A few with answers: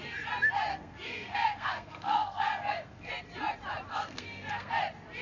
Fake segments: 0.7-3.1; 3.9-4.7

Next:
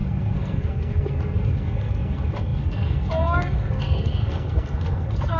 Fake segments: 0.0-5.4

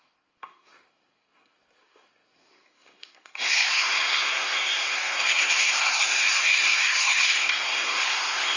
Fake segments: 0.0-8.6

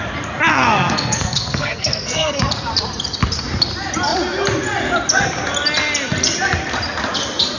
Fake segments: 0.5-2.4